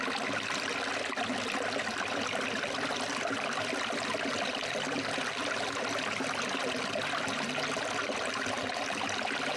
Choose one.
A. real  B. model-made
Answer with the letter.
A